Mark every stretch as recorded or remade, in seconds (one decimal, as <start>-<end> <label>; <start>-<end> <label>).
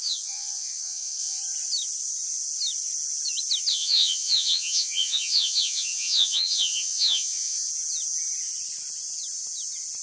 0.0-1.4 remade; 1.4-3.7 recorded; 3.7-7.7 remade; 7.7-10.0 recorded